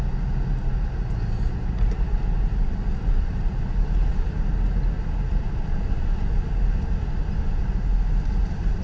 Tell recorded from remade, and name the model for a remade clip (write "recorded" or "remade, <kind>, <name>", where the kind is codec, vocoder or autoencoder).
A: recorded